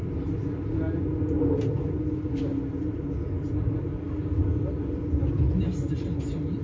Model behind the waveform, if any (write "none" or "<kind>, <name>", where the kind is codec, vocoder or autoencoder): none